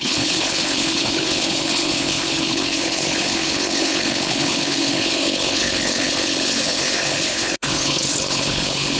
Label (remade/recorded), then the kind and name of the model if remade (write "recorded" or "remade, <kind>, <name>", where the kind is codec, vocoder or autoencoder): remade, codec, HILCodec